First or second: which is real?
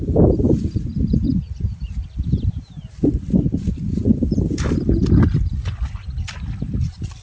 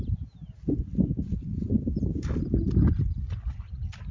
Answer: second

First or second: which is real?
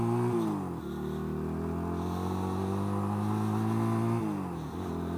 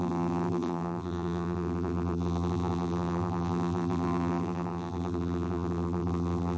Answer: first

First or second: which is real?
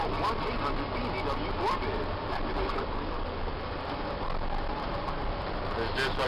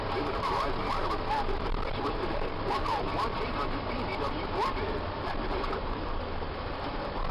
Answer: first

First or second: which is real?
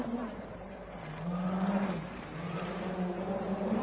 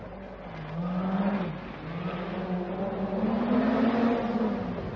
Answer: second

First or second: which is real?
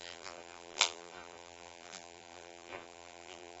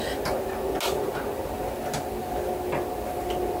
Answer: second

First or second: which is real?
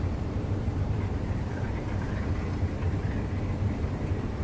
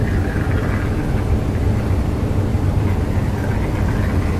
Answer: second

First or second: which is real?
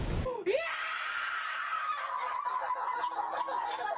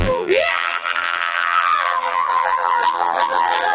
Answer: first